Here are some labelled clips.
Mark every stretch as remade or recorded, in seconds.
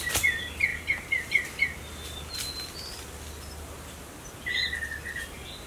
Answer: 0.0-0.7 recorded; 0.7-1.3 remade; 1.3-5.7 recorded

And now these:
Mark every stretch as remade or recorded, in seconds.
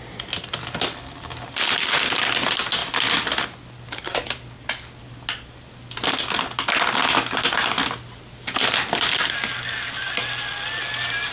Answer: 0.0-11.3 recorded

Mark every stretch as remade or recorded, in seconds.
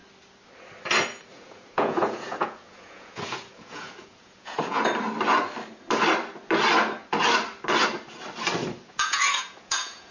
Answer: 0.0-1.3 recorded; 1.3-4.9 remade; 4.9-8.9 recorded; 8.9-10.1 remade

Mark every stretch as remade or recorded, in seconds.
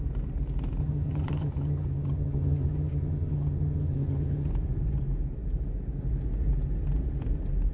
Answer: 0.0-0.8 recorded; 0.8-4.5 remade; 4.5-7.7 recorded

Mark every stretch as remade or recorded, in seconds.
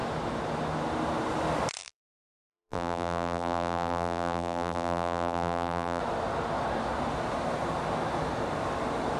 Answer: 0.0-1.8 recorded; 1.8-6.0 remade; 6.0-9.2 recorded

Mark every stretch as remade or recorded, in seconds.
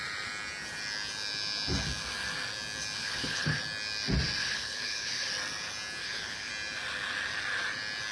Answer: 0.0-3.0 recorded; 3.0-3.6 remade; 3.6-4.4 recorded; 4.4-5.3 remade; 5.3-6.0 recorded; 6.0-6.5 remade; 6.5-8.1 recorded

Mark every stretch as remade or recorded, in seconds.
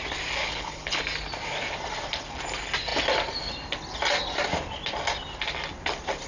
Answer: 0.0-0.4 recorded; 0.4-1.0 remade; 1.0-6.3 recorded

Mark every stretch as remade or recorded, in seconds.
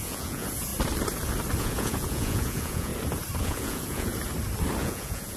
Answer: 0.0-0.7 remade; 0.7-1.6 recorded; 1.6-2.9 remade; 2.9-3.4 recorded; 3.4-4.1 remade; 4.1-4.8 recorded; 4.8-5.4 remade